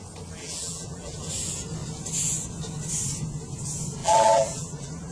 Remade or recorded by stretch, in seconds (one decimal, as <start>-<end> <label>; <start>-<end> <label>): 0.0-0.4 recorded; 0.4-1.2 remade; 1.2-4.0 recorded; 4.0-5.1 remade